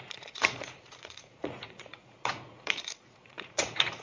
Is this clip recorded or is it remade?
remade